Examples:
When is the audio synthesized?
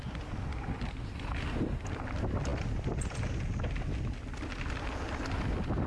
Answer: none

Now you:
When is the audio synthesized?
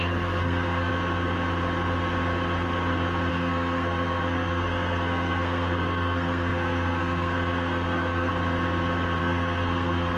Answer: 0.0-0.9; 3.3-8.3; 9.2-10.2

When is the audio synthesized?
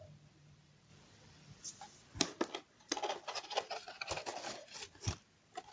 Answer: none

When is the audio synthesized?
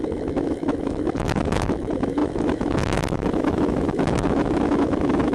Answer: 0.0-5.3